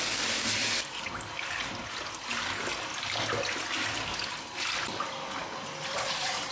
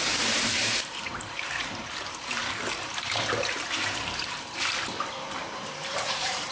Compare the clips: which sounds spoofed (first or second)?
second